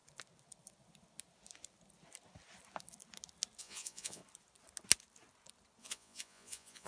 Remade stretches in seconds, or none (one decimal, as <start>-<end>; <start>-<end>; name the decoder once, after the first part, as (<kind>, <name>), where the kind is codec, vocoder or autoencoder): 3.6-4.2 (vocoder, Vocos); 5.8-6.9